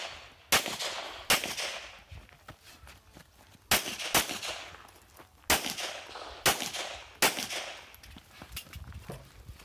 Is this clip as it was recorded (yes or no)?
yes